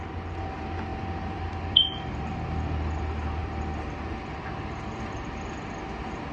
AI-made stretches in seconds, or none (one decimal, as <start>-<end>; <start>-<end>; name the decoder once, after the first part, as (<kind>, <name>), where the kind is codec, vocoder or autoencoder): 0.9-2.7 (vocoder, BigVGAN v2); 3.4-4.1